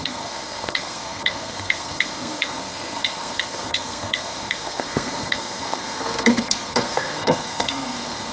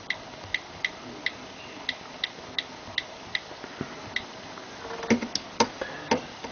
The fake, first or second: first